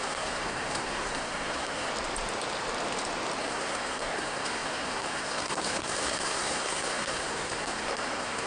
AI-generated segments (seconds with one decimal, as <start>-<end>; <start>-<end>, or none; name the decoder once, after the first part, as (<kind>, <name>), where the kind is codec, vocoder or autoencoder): 0.0-1.9 (codec, SNAC); 3.4-8.5